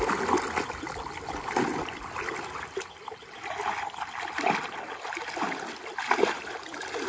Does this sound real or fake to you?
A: real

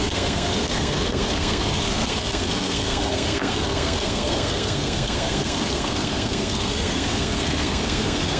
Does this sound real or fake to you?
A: fake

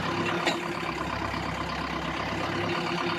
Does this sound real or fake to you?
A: real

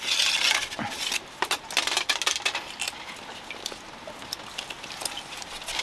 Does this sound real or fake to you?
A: real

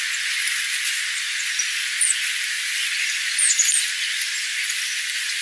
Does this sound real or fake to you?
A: real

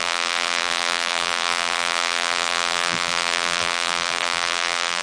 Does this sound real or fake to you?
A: fake